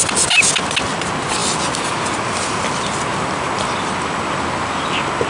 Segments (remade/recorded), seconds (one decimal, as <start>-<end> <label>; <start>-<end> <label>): 0.0-5.3 recorded